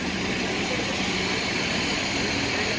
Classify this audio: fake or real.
real